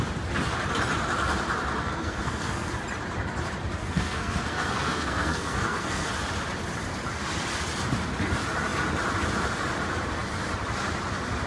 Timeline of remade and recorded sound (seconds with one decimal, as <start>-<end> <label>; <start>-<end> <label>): 0.0-1.8 recorded; 1.8-2.7 remade; 2.7-3.8 recorded; 3.8-6.1 remade; 6.1-11.5 recorded